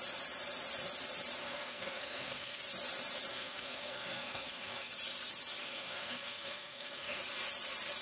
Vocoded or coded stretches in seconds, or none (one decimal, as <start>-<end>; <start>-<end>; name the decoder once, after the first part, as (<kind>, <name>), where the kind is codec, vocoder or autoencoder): 1.4-2.6 (codec, SNAC); 3.3-4.9; 5.6-7.2